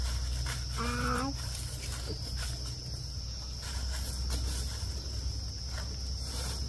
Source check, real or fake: real